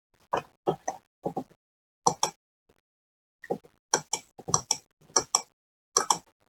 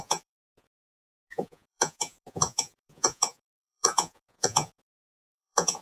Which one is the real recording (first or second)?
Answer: first